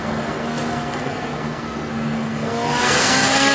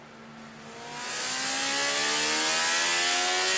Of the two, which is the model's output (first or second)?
first